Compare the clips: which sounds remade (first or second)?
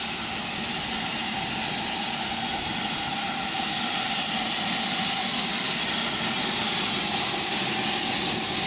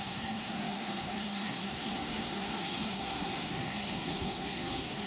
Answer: second